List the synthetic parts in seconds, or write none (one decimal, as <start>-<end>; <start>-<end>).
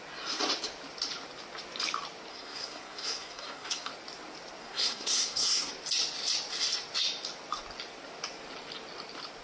2.3-3.9; 4.6-5.7